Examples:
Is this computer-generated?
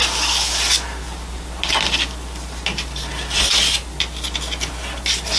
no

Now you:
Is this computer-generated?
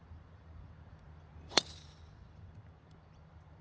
yes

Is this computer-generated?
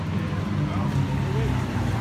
no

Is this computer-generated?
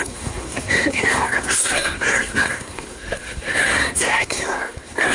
yes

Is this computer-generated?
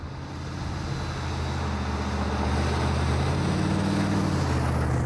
no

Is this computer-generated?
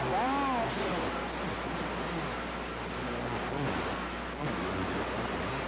no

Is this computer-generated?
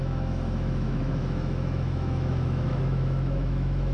yes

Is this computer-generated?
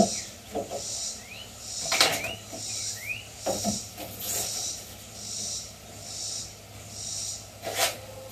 no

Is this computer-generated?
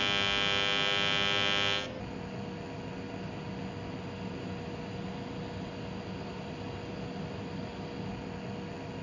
no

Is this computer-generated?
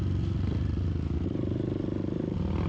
no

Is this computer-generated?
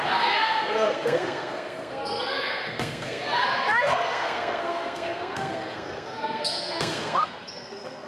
yes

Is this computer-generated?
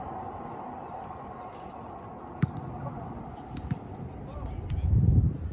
no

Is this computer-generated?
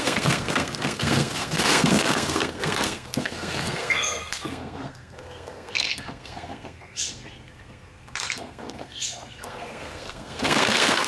yes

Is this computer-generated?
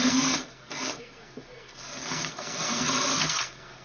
yes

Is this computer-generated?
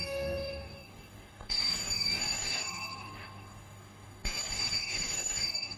yes